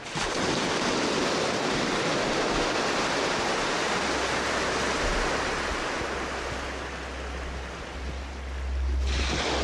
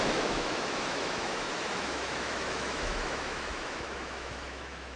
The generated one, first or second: second